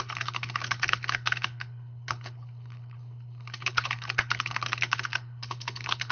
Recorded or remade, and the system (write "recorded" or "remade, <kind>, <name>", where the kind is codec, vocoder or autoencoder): remade, codec, HILCodec